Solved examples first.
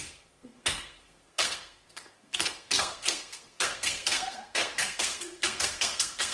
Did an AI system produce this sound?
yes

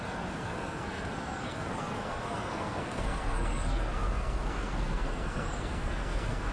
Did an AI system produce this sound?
yes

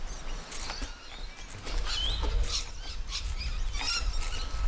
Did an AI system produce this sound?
no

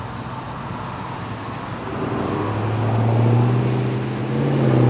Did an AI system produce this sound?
no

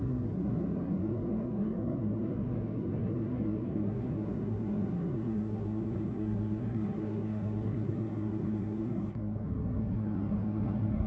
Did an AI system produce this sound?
yes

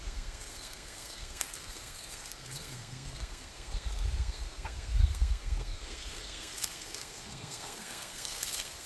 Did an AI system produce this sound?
yes